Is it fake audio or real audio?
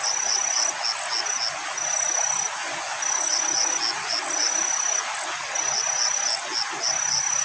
real